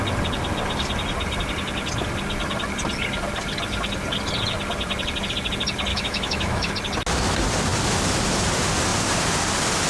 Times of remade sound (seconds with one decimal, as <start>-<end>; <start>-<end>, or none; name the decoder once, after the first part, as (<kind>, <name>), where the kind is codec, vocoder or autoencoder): 5.9-6.7 (autoencoder, DAC-VAE)